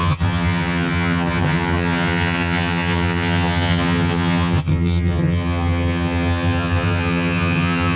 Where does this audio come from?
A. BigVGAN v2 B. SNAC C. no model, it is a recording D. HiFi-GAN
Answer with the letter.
D